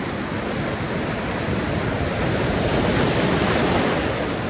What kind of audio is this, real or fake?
fake